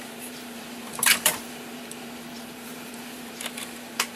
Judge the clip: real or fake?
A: fake